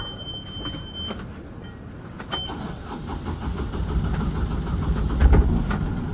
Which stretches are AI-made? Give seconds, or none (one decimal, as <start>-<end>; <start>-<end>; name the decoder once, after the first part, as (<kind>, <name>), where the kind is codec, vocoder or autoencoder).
none